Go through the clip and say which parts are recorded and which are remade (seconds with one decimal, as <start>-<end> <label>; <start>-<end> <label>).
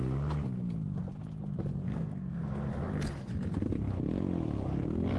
0.0-1.8 recorded; 1.8-2.7 remade; 2.7-5.2 recorded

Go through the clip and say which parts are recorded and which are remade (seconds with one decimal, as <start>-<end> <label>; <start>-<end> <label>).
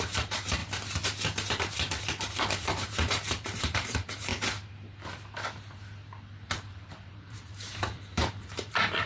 0.0-0.6 remade; 0.6-1.5 recorded; 1.5-4.3 remade; 4.3-6.5 recorded; 6.5-9.1 remade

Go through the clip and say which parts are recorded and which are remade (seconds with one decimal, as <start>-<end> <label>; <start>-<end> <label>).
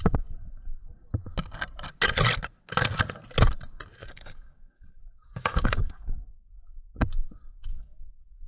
0.0-4.0 recorded; 4.0-6.5 remade; 6.5-7.7 recorded; 7.7-8.5 remade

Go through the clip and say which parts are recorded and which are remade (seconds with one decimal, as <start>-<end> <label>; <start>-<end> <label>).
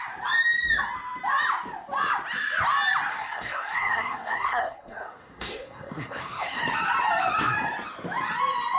0.0-3.1 recorded; 3.1-6.6 remade; 6.6-8.8 recorded